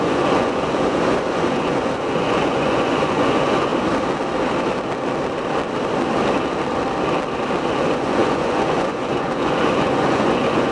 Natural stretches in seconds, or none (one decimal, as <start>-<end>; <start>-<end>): 3.7-7.7